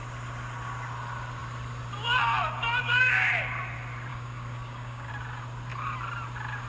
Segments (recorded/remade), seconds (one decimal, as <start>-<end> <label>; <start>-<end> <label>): 0.0-2.8 recorded; 2.8-3.3 remade; 3.3-4.1 recorded; 4.1-5.1 remade; 5.1-6.7 recorded